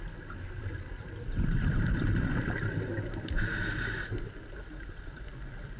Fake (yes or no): no